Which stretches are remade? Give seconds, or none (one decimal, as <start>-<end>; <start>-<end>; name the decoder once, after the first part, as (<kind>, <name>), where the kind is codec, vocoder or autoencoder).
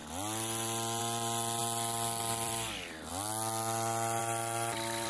1.0-3.1 (vocoder, BigVGAN v2); 4.2-5.1